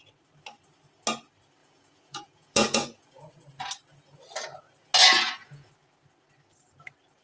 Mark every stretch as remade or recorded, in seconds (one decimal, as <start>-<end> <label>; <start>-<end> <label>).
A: 0.0-1.6 recorded; 1.6-3.7 remade; 3.7-5.0 recorded; 5.0-5.7 remade; 5.7-7.2 recorded

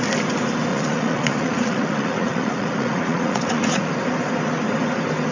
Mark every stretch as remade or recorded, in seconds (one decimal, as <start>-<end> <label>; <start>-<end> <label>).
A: 0.0-0.7 recorded; 0.7-3.9 remade; 3.9-5.3 recorded

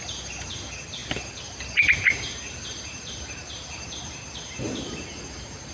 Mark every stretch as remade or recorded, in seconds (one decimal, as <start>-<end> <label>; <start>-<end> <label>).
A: 0.0-1.0 recorded; 1.0-4.4 remade; 4.4-5.7 recorded

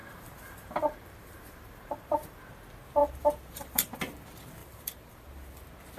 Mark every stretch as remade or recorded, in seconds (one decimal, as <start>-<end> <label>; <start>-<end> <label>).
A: 0.0-2.4 remade; 2.4-3.0 recorded; 3.0-4.0 remade; 4.0-4.6 recorded; 4.6-5.5 remade; 5.5-6.0 recorded

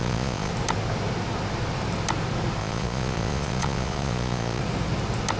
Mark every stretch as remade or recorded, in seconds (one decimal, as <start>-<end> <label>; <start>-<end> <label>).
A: 0.0-0.5 remade; 0.5-2.6 recorded; 2.6-4.6 remade; 4.6-5.4 recorded

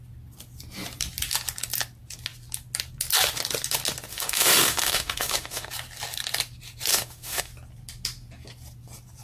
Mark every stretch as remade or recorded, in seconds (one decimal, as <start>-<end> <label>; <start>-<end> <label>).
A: 0.0-4.1 recorded; 4.1-5.7 remade; 5.7-6.9 recorded; 6.9-7.5 remade; 7.5-9.2 recorded

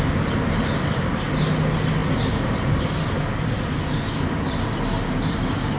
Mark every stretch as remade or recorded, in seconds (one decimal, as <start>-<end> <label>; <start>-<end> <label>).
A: 0.0-5.8 recorded

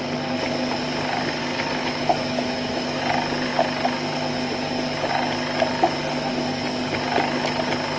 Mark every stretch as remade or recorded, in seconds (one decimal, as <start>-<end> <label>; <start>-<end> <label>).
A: 0.0-1.4 recorded; 1.4-3.0 remade; 3.0-8.0 recorded